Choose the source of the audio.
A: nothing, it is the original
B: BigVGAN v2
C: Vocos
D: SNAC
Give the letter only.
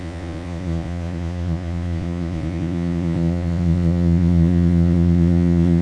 C